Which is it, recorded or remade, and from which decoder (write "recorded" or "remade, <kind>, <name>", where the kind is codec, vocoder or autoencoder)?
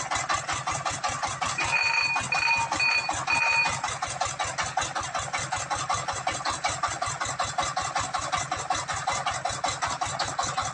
recorded